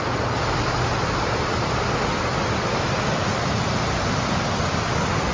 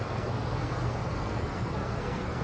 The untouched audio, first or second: first